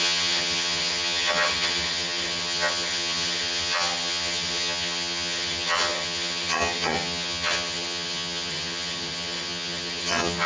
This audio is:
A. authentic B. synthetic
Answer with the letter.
B